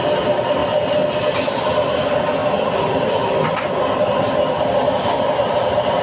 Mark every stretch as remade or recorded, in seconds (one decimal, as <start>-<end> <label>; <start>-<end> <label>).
0.0-6.0 recorded